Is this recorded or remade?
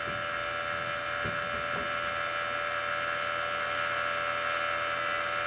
recorded